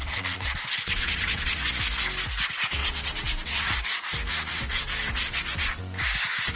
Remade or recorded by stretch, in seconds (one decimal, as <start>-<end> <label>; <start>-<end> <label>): 0.0-1.7 remade; 1.7-2.8 recorded; 2.8-3.8 remade; 3.8-4.5 recorded; 4.5-5.8 remade; 5.8-6.6 recorded